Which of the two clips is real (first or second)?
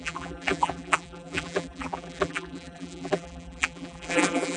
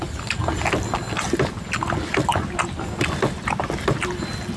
second